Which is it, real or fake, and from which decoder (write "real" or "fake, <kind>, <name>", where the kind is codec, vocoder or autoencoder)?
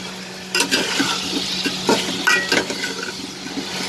real